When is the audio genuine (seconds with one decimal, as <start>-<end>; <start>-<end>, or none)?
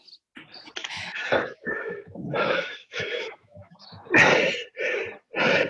0.0-0.8; 4.1-5.7